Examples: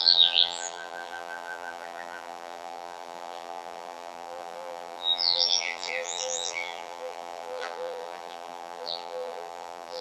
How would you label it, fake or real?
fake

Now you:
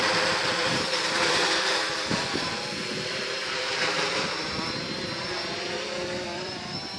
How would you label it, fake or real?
fake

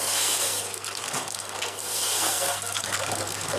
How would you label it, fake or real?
fake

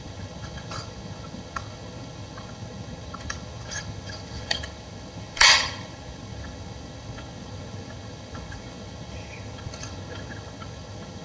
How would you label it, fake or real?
fake